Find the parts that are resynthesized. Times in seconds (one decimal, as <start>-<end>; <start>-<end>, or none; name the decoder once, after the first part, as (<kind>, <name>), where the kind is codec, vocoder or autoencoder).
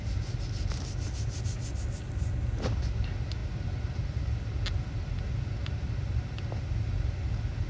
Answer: none